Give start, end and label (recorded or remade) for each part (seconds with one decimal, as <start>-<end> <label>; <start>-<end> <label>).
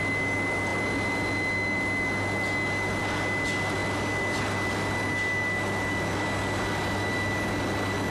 0.0-8.1 recorded